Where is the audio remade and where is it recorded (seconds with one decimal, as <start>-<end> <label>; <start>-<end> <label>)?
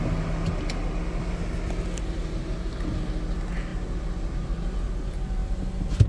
0.0-6.1 recorded